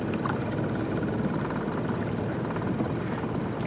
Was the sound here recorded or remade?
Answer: recorded